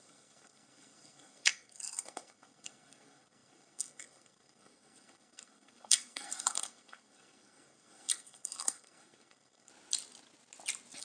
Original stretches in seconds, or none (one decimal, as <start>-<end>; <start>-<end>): 9.7-11.0